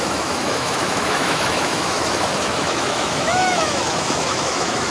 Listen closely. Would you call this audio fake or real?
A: fake